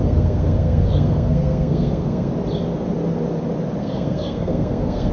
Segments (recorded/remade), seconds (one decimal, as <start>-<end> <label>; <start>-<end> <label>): 0.0-2.3 remade; 2.3-3.8 recorded; 3.8-5.1 remade